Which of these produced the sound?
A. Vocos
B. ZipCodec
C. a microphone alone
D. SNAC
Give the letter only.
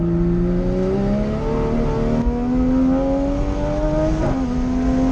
C